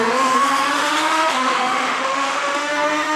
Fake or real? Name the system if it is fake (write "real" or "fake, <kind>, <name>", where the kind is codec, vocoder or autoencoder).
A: fake, autoencoder, DAC-VAE